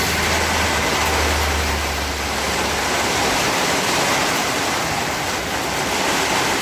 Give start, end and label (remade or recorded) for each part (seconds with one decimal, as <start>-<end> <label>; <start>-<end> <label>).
0.0-6.6 recorded